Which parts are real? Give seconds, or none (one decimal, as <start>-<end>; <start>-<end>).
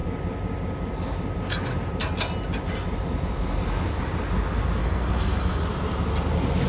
0.0-4.8; 5.6-6.7